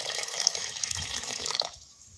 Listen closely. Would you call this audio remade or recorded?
remade